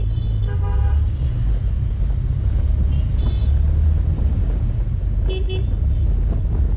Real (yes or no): yes